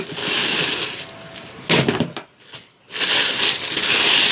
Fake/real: real